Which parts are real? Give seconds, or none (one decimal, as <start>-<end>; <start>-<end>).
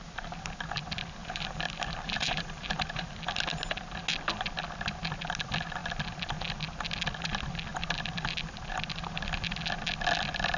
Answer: 0.0-1.2; 3.1-10.6